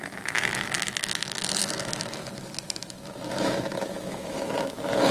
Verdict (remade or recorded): remade